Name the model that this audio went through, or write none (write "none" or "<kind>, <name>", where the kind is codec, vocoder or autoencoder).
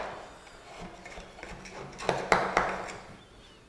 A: none